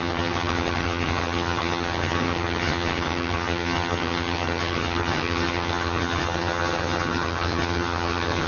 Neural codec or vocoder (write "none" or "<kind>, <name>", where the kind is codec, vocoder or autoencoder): vocoder, HiFi-GAN